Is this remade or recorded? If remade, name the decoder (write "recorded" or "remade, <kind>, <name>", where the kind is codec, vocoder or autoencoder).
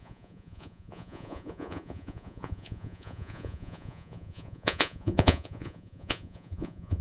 remade, vocoder, Vocos